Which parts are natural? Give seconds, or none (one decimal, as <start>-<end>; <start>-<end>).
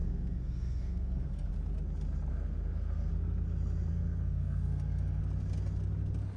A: 1.5-2.3; 3.1-3.9; 5.2-6.4